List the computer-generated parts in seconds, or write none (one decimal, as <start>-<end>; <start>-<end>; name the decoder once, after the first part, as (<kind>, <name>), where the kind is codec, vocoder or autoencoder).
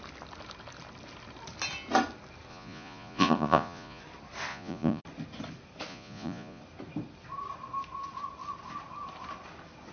2.5-4.0 (vocoder, Vocos); 4.5-5.0; 5.9-6.6